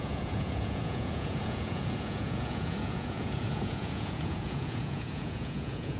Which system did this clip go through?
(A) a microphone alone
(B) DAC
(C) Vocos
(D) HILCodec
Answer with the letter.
C